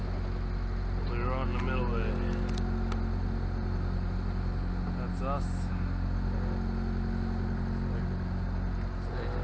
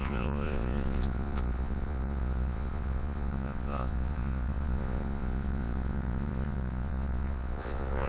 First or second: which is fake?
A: second